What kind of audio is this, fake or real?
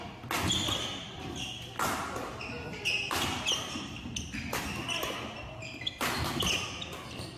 real